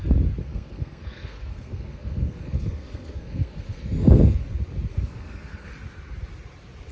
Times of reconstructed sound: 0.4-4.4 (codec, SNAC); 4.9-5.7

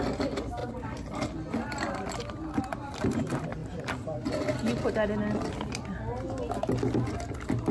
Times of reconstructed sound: none

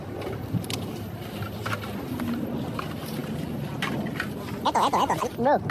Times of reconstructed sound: none

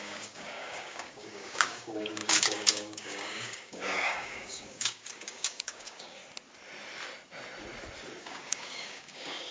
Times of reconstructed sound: 0.0-6.2 (codec, DAC); 8.2-9.5

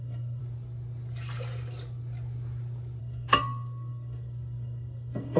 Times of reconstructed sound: 0.0-0.4 (codec, SNAC); 3.0-5.4

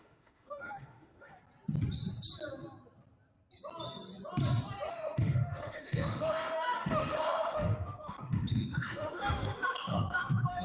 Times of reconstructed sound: 0.0-1.4 (autoencoder, DAC-VAE); 4.9-10.6

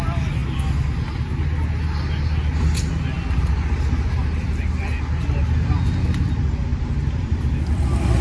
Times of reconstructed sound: 6.7-7.4 (vocoder, BigVGAN v2)